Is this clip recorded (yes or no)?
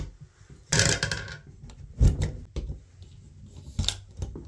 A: yes